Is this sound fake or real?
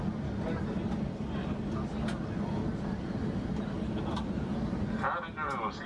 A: real